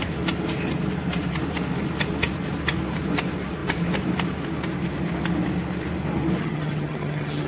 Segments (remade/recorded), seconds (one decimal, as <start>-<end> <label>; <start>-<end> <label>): 0.0-6.4 recorded; 6.4-7.5 remade